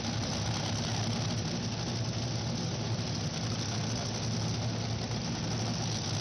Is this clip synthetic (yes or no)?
no